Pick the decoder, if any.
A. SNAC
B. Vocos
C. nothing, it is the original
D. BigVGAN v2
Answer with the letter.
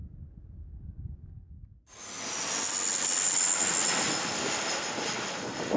C